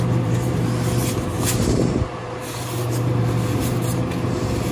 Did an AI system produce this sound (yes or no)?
yes